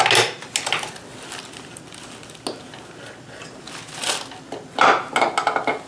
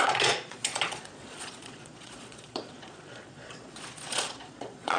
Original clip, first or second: first